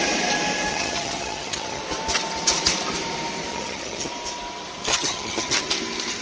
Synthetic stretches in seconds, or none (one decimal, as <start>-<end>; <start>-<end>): 0.7-1.8; 3.5-4.1; 4.9-5.7